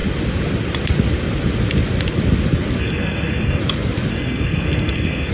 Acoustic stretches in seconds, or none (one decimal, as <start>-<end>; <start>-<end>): 0.0-2.8; 3.6-4.1